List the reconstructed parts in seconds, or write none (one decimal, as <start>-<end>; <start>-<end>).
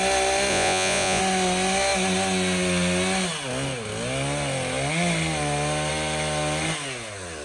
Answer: 0.5-1.2